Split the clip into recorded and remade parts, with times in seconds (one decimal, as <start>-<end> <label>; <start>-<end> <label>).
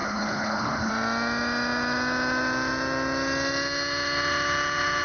0.0-0.9 remade; 0.9-5.0 recorded